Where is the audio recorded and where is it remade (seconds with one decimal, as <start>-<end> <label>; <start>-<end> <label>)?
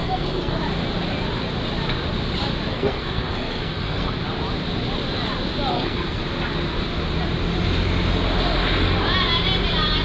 0.0-0.6 remade; 0.6-2.7 recorded; 2.7-4.1 remade; 4.1-5.7 recorded; 5.7-6.2 remade; 6.2-10.0 recorded